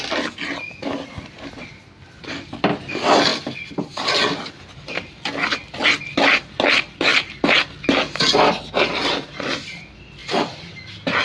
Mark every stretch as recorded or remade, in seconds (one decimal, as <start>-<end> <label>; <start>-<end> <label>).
0.0-3.3 recorded; 3.3-4.5 remade; 4.5-7.1 recorded; 7.1-7.8 remade; 7.8-11.2 recorded

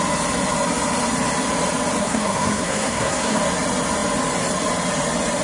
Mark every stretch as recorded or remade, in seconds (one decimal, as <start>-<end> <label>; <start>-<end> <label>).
0.0-2.0 recorded; 2.0-3.4 remade; 3.4-5.4 recorded

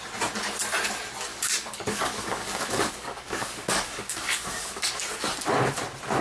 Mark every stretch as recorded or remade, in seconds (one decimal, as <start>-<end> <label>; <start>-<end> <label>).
0.0-1.3 recorded; 1.3-5.0 remade; 5.0-6.2 recorded

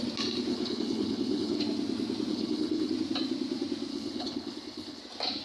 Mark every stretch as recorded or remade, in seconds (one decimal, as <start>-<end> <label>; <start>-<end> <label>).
0.0-0.5 recorded; 0.5-1.6 remade; 1.6-2.3 recorded; 2.3-2.9 remade; 2.9-3.9 recorded; 3.9-5.0 remade; 5.0-5.4 recorded